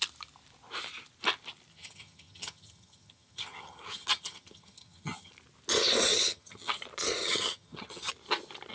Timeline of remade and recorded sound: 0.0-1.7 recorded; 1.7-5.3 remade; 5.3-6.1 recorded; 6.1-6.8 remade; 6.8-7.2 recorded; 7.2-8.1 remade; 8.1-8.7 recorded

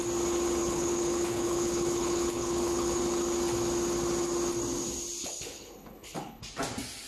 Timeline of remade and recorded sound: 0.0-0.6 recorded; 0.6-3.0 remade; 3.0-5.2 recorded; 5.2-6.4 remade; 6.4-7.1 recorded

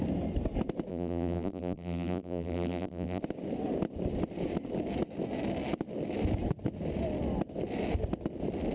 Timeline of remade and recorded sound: 0.0-0.9 recorded; 0.9-3.2 remade; 3.2-8.7 recorded

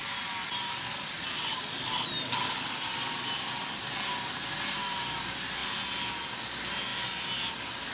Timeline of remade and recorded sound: 0.0-7.9 recorded

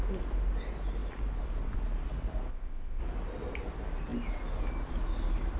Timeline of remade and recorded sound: 0.0-2.5 recorded; 2.5-3.0 remade; 3.0-5.6 recorded

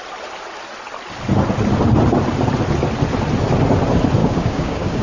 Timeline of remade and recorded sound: 0.0-4.2 recorded; 4.2-5.0 remade

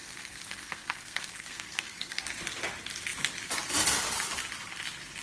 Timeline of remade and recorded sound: 0.0-2.2 remade; 2.2-5.2 recorded